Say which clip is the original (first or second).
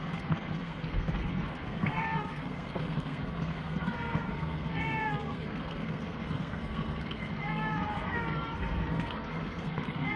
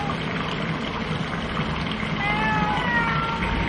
second